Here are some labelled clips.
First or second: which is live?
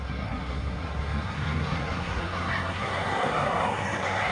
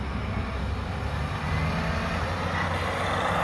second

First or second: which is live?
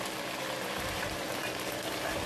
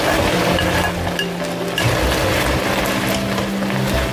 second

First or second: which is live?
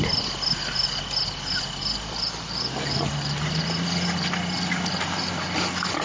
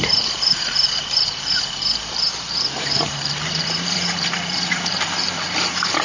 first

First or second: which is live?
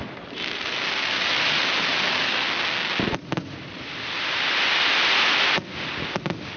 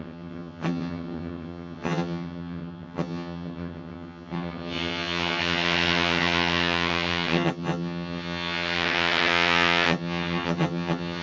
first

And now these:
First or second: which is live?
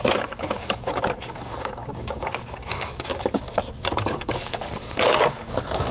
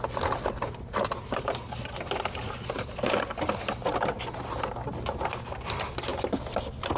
second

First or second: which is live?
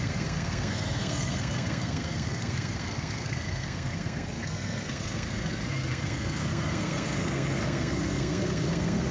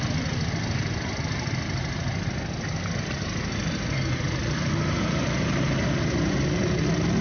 second